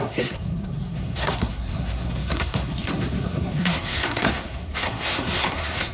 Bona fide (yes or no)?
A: no